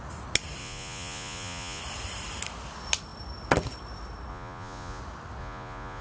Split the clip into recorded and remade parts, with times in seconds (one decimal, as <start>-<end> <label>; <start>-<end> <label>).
0.0-0.6 recorded; 0.6-1.8 remade; 1.8-4.3 recorded; 4.3-5.0 remade; 5.0-5.4 recorded; 5.4-6.0 remade